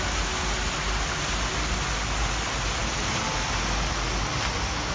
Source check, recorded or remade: recorded